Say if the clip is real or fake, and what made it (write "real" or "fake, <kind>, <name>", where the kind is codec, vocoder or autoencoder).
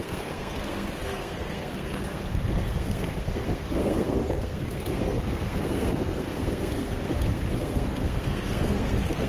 fake, codec, SNAC